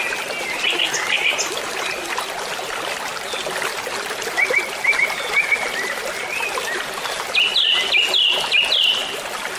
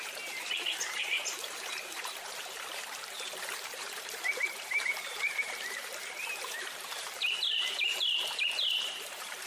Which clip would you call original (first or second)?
first